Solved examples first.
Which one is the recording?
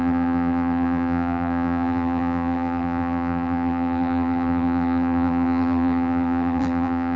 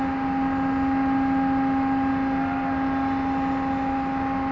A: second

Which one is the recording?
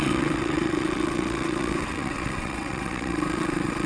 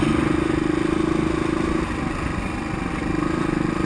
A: second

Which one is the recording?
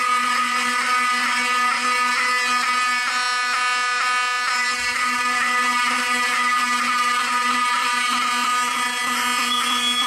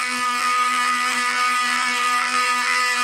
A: first